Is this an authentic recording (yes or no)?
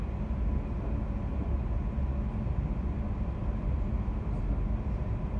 yes